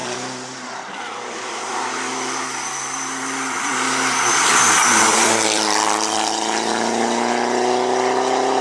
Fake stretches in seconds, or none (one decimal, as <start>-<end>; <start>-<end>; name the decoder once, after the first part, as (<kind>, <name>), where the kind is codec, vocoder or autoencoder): 0.0-1.7 (vocoder, BigVGAN v2); 2.1-3.8; 5.1-6.7